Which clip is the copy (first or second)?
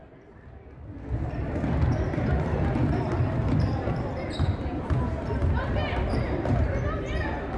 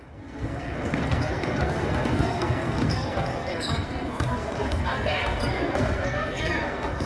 second